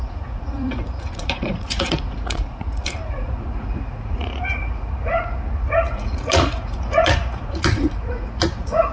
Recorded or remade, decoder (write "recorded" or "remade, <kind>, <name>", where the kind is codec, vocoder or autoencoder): remade, vocoder, Vocos